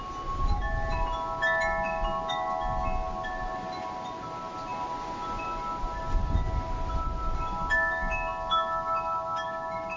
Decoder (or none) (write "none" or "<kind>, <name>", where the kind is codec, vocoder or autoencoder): none